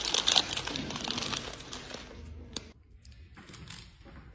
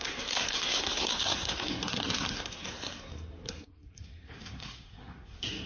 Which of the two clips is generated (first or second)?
second